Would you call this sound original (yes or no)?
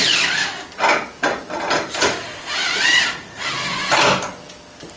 yes